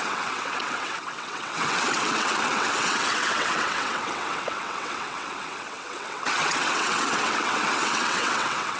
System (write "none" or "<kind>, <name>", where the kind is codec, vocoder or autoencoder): vocoder, WaveNeXt